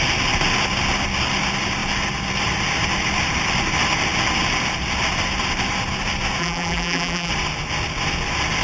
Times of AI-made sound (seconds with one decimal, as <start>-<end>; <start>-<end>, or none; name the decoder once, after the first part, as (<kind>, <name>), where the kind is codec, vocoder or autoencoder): 6.4-7.3 (vocoder, BigVGAN v2)